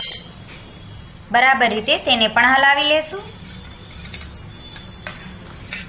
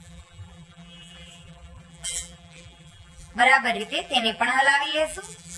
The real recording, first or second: first